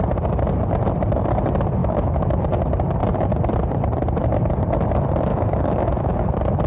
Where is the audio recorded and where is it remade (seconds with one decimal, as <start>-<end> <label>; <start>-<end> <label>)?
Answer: 0.0-1.8 recorded; 1.8-2.4 remade; 2.4-5.3 recorded; 5.3-6.3 remade; 6.3-6.7 recorded